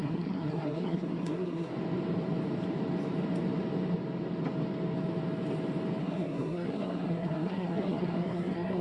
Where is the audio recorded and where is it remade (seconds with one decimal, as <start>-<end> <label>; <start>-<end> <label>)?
0.0-1.7 remade; 1.7-6.0 recorded; 6.0-8.8 remade